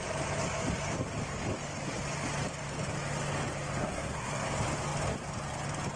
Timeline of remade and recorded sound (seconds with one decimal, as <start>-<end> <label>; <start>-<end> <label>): 0.0-3.8 recorded; 3.8-4.5 remade; 4.5-6.0 recorded